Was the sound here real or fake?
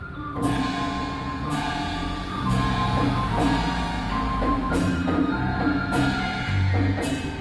fake